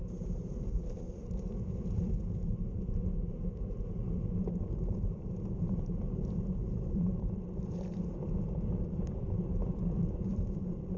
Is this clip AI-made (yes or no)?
yes